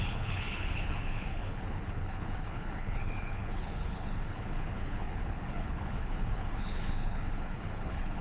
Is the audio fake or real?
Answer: fake